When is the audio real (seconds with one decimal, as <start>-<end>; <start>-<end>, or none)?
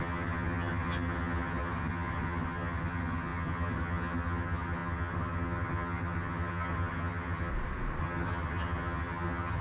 7.5-8.0